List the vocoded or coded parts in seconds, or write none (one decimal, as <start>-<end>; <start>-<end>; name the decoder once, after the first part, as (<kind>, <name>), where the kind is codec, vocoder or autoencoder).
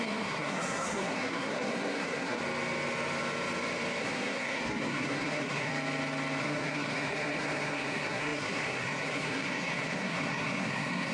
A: 0.0-2.4 (codec, SNAC); 4.0-5.7; 6.4-11.1